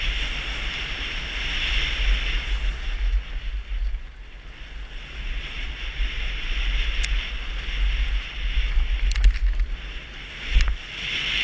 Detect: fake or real real